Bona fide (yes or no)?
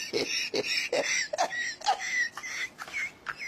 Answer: yes